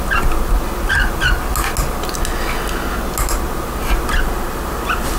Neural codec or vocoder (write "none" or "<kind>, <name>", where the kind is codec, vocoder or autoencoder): none